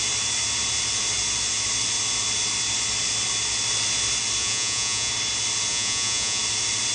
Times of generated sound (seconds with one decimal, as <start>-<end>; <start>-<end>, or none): 4.4-5.1; 5.7-6.4